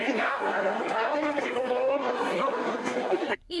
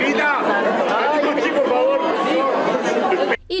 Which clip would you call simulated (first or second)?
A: first